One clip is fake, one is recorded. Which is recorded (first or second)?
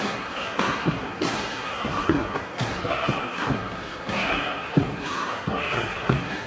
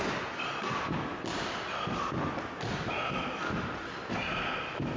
second